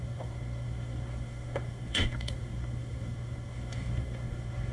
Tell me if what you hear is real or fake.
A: fake